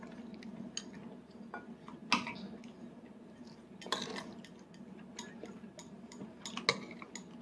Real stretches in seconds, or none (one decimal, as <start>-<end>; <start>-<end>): 0.0-7.4